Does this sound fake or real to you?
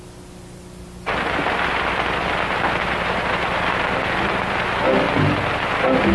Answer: real